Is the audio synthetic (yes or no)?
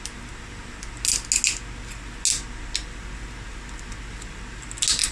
no